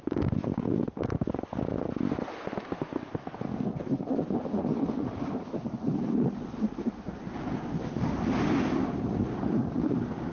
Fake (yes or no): no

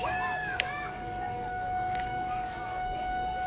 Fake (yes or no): yes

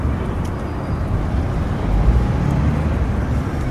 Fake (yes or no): no